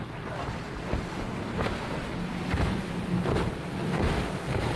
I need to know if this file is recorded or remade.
recorded